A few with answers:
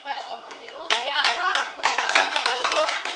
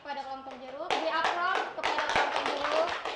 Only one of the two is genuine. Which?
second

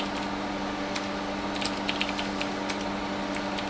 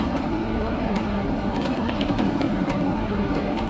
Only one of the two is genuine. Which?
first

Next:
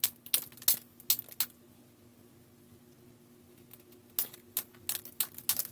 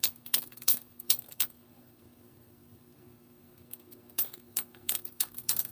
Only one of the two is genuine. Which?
first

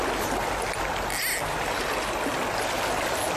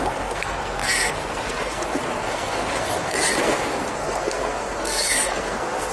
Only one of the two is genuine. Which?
first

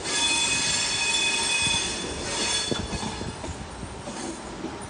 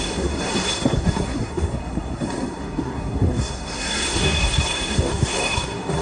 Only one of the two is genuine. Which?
first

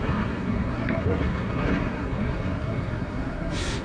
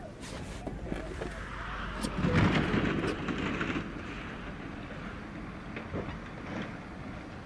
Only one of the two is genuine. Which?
second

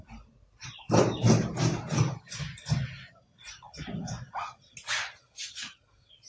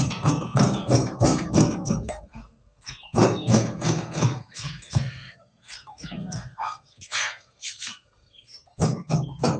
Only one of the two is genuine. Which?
first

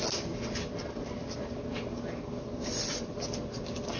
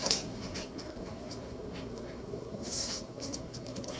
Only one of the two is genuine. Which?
first